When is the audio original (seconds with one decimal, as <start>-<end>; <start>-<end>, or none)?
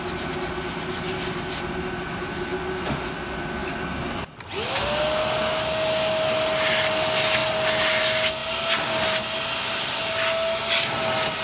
0.0-11.4